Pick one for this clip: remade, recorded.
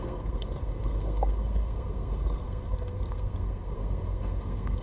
remade